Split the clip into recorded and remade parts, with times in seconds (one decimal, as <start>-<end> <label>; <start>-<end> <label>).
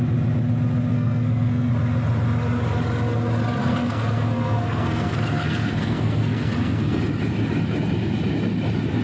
0.0-0.9 recorded; 0.9-1.7 remade; 1.7-3.6 recorded; 3.6-7.0 remade; 7.0-9.0 recorded